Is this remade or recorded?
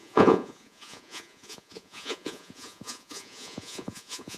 remade